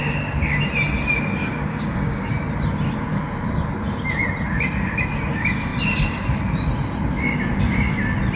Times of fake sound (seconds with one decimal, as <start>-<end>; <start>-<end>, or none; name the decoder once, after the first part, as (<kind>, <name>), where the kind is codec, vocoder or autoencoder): 1.4-2.3 (codec, DAC)